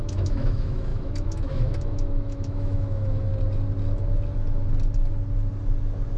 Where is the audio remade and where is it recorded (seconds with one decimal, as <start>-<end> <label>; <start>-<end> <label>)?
0.0-3.3 remade; 3.3-6.2 recorded